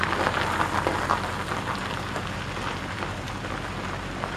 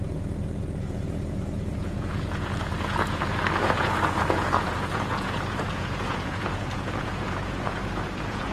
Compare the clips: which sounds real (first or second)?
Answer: first